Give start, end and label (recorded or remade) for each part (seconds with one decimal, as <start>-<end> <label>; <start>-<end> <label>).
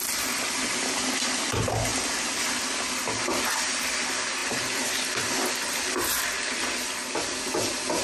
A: 0.0-4.4 recorded; 4.4-6.9 remade; 6.9-8.0 recorded